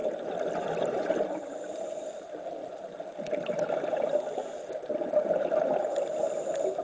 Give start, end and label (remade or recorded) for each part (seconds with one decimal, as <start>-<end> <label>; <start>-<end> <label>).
0.0-6.8 recorded